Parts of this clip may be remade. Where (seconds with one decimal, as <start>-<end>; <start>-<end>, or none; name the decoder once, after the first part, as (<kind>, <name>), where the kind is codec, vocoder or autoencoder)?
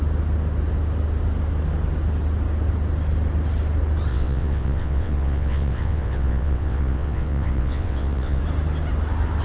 4.1-8.4 (vocoder, WaveNeXt)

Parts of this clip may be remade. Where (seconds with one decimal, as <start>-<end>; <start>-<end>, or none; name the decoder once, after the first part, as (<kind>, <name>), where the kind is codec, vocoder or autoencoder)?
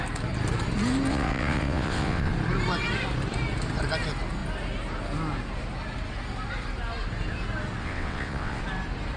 1.1-2.3 (vocoder, WaveNeXt); 7.8-8.6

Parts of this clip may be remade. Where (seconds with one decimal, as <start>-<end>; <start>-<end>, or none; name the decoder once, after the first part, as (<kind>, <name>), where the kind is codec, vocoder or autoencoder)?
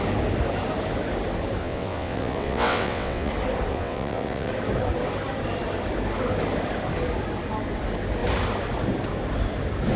1.6-3.3 (vocoder, WaveNeXt); 3.7-4.5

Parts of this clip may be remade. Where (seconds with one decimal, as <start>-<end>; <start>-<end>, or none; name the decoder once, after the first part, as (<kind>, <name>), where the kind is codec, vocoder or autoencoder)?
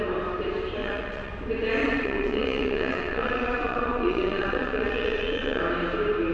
0.8-1.3 (vocoder, WaveNeXt); 1.8-5.6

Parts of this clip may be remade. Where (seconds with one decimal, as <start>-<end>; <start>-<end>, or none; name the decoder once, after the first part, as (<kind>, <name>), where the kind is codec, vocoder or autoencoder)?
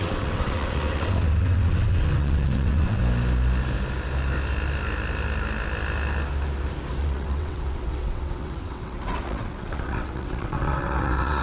0.0-3.0 (vocoder, WaveNeXt); 7.0-11.4